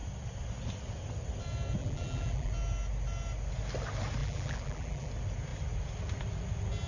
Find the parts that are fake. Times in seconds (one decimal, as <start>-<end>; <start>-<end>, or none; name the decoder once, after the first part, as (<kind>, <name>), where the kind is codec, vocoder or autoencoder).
1.8-2.5 (vocoder, BigVGAN v2); 4.2-5.1